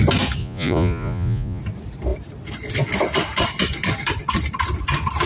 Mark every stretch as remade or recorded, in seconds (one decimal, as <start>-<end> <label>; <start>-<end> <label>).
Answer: 0.0-0.4 recorded; 0.4-1.6 remade; 1.6-5.3 recorded